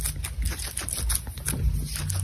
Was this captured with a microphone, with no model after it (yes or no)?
yes